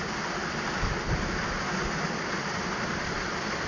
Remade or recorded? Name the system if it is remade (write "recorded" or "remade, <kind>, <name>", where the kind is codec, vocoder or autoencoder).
recorded